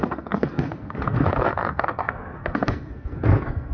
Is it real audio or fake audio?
fake